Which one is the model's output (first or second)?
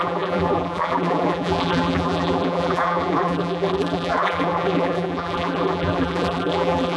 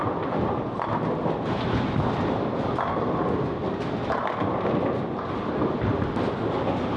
first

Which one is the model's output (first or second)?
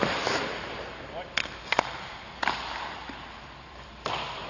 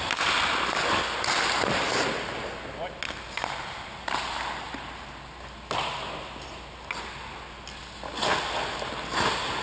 first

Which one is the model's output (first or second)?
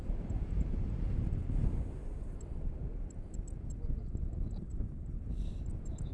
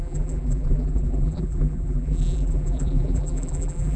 second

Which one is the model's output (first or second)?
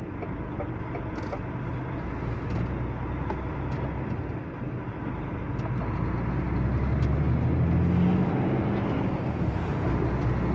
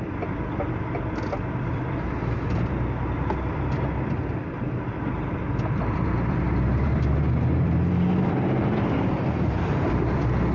second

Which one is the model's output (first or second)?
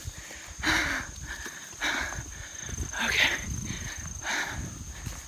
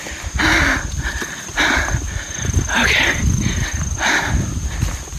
second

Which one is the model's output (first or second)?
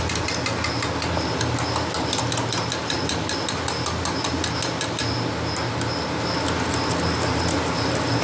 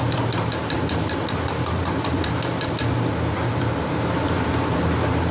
second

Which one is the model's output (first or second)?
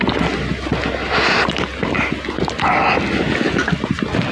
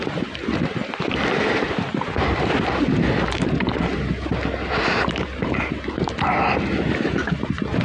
second